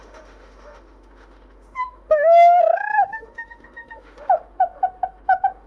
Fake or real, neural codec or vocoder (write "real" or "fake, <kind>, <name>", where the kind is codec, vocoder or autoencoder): fake, autoencoder, DAC-VAE